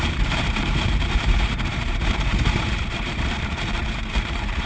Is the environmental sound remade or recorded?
remade